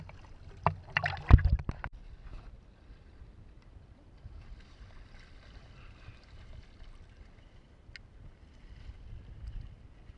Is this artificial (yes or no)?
no